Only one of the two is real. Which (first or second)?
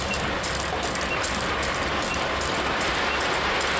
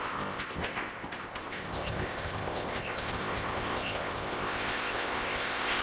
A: first